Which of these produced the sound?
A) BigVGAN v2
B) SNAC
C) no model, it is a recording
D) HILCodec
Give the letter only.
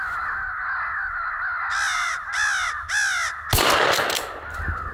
C